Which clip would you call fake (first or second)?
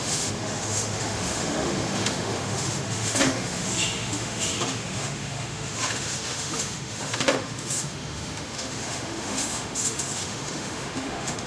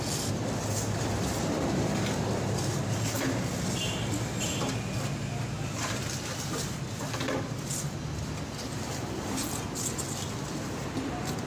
first